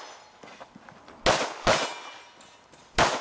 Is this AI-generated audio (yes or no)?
no